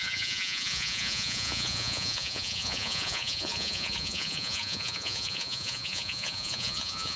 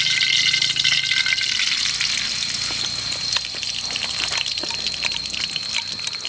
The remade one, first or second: first